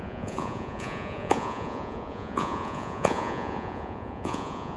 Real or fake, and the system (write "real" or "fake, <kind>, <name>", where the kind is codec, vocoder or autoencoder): fake, vocoder, Vocos